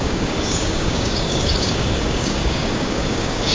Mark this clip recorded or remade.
remade